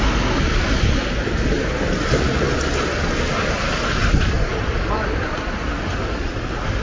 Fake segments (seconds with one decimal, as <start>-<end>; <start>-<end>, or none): none